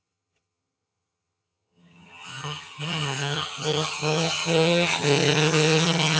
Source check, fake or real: fake